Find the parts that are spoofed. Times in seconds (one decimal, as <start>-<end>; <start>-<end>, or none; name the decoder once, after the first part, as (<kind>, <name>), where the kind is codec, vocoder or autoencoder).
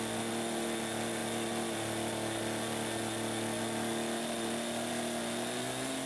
none